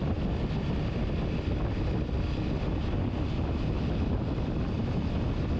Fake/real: real